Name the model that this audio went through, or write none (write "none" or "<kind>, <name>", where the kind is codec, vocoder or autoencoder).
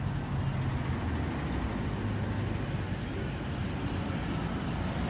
none